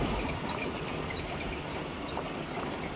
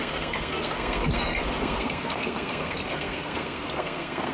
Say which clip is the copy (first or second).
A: second